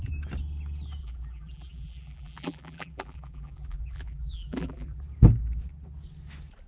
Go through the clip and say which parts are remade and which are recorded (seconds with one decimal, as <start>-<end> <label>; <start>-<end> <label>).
0.0-1.0 recorded; 1.0-5.0 remade; 5.0-6.7 recorded